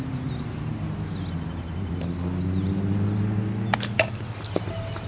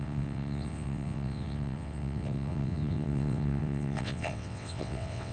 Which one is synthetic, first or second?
second